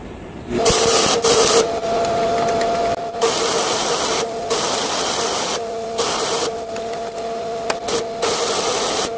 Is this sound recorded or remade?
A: recorded